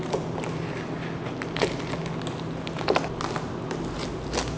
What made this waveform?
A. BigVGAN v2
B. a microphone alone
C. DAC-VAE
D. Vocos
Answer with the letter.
B